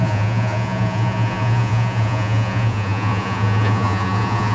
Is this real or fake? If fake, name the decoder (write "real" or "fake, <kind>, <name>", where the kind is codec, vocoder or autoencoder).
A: fake, vocoder, Vocos